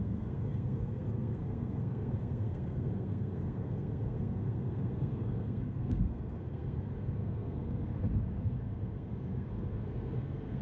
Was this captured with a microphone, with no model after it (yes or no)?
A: no